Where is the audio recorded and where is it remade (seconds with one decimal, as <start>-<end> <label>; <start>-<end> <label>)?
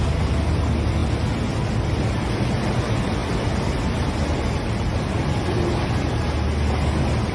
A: 0.0-7.3 recorded